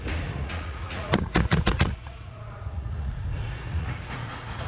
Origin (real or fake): fake